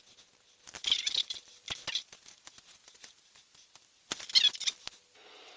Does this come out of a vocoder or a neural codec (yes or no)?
no